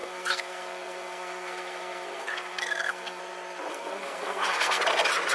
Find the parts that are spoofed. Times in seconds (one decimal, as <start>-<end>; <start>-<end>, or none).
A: 0.0-3.2; 3.7-4.8